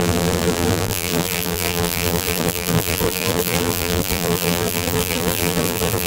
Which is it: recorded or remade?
remade